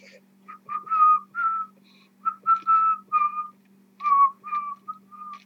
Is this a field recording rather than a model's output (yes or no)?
yes